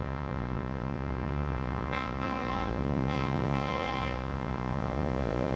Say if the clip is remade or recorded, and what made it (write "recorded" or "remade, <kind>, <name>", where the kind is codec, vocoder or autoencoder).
remade, vocoder, Vocos